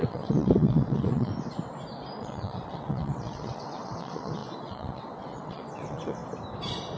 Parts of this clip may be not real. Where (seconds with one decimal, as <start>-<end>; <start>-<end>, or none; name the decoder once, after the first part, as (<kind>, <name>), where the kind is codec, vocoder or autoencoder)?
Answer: 0.0-1.3 (vocoder, WaveNeXt); 2.2-6.2